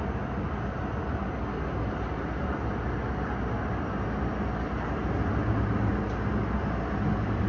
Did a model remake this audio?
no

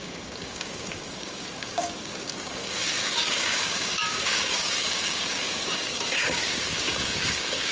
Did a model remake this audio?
yes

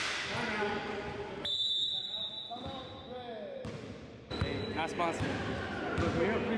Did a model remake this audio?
no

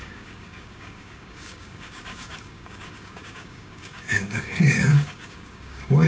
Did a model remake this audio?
yes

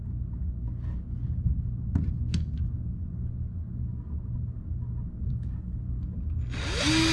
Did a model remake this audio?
no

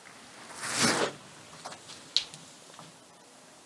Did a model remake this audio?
no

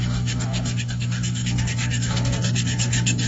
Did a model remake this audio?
yes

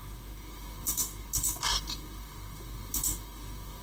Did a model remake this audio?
yes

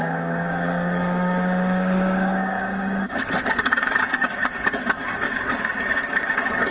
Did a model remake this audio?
yes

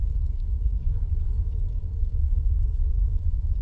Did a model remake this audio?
yes